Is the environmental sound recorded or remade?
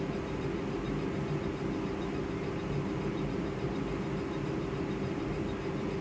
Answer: recorded